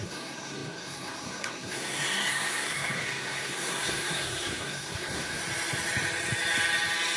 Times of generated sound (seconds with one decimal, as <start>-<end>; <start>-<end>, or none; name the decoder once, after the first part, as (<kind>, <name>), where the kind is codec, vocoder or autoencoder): 0.0-5.4 (codec, SNAC)